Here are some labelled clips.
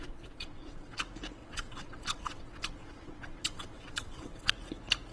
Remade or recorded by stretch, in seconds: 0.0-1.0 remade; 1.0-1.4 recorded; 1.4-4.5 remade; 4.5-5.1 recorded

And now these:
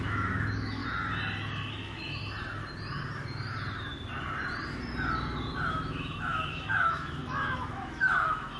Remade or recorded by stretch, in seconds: 0.0-0.8 remade; 0.8-1.7 recorded; 1.7-2.2 remade; 2.2-5.7 recorded; 5.7-8.6 remade

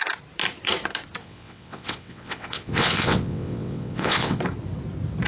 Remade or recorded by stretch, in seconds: 0.0-1.2 recorded; 1.2-4.4 remade; 4.4-5.3 recorded

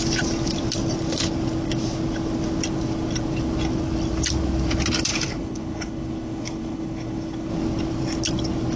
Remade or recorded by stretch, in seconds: 0.0-5.1 recorded; 5.1-7.5 remade; 7.5-8.8 recorded

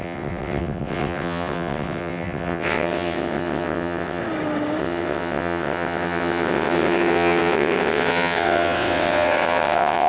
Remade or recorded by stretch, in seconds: 0.0-4.2 remade; 4.2-4.8 recorded; 4.8-10.1 remade